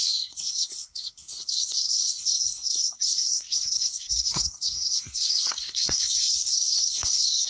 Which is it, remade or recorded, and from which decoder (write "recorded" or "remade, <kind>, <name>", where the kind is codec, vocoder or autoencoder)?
remade, codec, SNAC